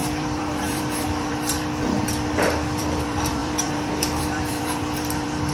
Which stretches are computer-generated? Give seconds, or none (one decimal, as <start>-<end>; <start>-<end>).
0.0-5.5